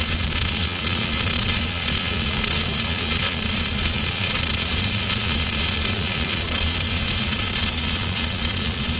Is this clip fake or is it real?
fake